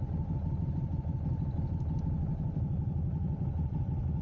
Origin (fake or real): real